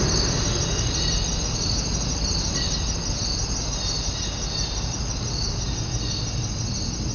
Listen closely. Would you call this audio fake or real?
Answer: real